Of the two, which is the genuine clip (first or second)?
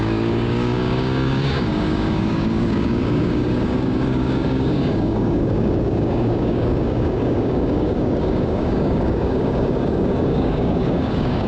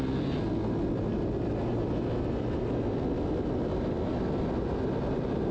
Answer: second